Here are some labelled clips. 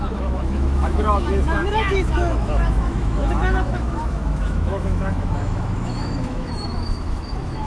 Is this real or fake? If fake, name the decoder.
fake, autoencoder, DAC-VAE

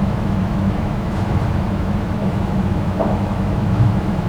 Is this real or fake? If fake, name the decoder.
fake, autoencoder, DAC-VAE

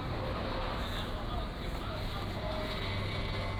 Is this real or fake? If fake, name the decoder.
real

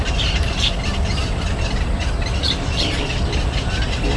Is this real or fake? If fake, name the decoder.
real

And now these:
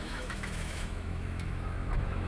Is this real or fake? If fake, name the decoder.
fake, autoencoder, DAC-VAE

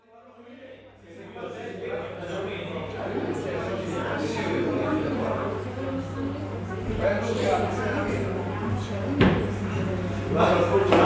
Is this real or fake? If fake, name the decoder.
real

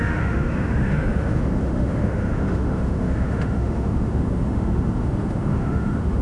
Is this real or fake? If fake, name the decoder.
fake, autoencoder, DAC-VAE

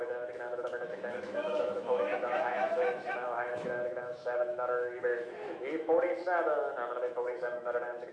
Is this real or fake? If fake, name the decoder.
fake, autoencoder, DAC-VAE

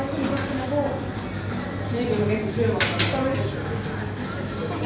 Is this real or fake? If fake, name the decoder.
real